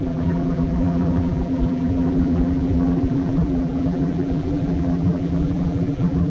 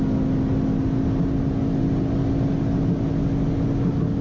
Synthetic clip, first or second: first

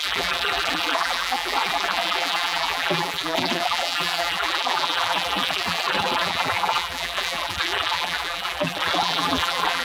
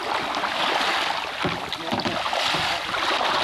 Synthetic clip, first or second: first